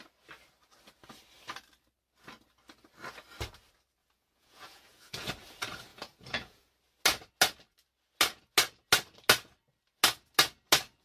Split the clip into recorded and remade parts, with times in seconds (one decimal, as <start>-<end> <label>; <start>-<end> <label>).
0.0-4.0 recorded; 4.0-5.3 remade; 5.3-5.9 recorded; 5.9-6.7 remade; 6.7-11.0 recorded